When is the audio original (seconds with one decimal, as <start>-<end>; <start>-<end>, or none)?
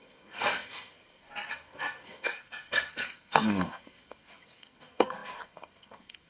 none